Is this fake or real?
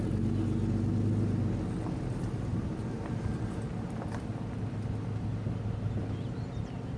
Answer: real